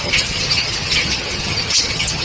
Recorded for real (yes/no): no